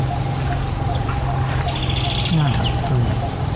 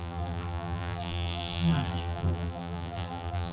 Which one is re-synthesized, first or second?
second